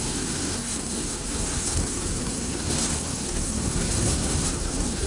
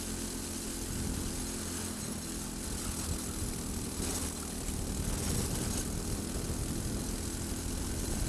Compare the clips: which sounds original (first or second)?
second